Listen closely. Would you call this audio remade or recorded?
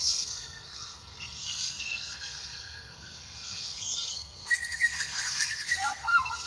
remade